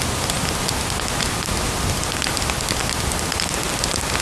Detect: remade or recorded recorded